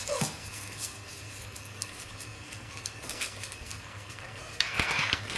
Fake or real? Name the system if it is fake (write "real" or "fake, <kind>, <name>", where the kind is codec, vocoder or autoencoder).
fake, codec, SNAC